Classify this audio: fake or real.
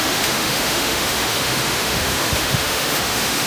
fake